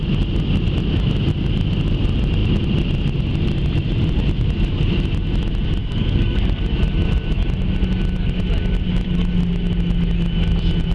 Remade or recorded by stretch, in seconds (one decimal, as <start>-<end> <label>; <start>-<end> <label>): 0.0-5.8 recorded; 5.8-6.6 remade; 6.6-10.9 recorded